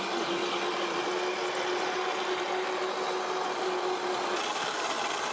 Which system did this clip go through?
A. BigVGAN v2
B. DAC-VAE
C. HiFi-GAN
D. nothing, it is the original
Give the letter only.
D